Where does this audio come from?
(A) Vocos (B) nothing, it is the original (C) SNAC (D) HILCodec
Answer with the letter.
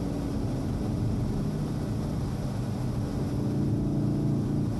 B